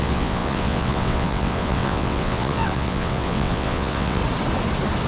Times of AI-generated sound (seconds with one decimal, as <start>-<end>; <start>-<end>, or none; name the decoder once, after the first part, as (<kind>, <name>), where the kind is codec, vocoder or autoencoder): 0.0-4.2 (vocoder, WaveNeXt)